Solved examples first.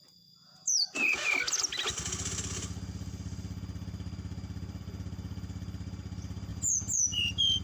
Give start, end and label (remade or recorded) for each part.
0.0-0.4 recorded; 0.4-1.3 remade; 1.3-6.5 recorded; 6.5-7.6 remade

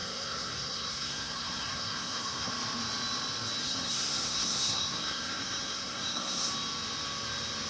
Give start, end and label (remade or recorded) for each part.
0.0-2.5 remade; 2.5-3.6 recorded; 3.6-6.5 remade; 6.5-7.7 recorded

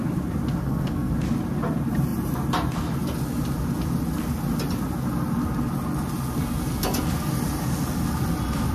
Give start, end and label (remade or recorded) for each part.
0.0-0.6 recorded; 0.6-1.1 remade; 1.1-8.7 recorded

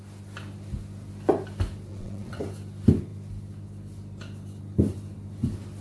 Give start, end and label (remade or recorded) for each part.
0.0-1.9 recorded; 1.9-2.4 remade; 2.4-5.8 recorded

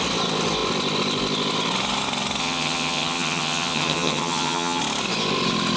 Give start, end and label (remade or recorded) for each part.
0.0-2.4 recorded; 2.4-4.8 remade; 4.8-5.8 recorded

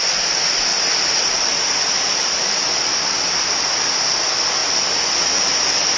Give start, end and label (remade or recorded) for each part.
0.0-6.0 recorded

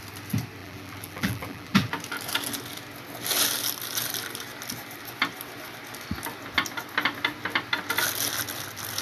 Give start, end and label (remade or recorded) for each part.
0.0-0.6 recorded; 0.6-1.9 remade; 1.9-9.0 recorded